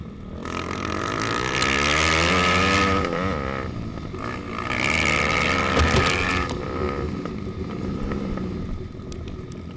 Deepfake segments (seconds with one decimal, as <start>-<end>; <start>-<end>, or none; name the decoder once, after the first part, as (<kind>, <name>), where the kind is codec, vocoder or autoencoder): none